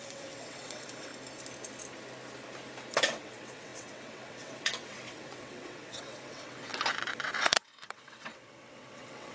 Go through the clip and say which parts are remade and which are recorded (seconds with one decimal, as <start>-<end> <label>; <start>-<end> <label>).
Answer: 0.0-1.1 remade; 1.1-3.0 recorded; 3.0-9.3 remade